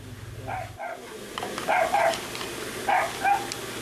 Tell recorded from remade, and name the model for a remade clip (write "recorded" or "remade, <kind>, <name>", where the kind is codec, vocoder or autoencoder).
recorded